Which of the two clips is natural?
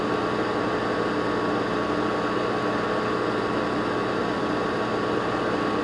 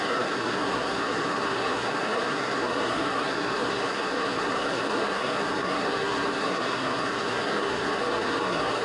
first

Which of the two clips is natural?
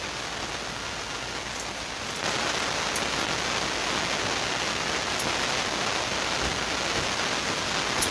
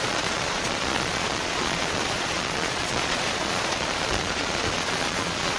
first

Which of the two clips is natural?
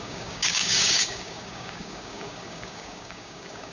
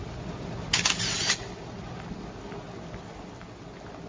second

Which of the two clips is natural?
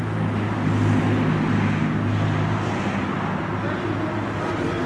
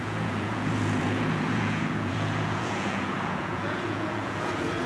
first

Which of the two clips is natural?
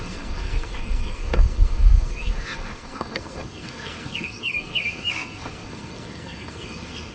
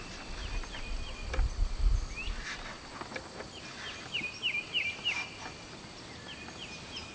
second